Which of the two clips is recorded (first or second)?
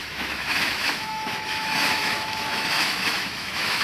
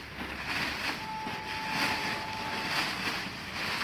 second